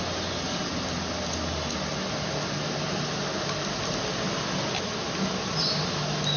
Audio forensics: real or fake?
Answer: real